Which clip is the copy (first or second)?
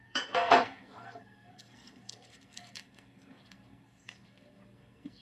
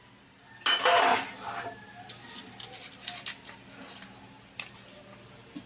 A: first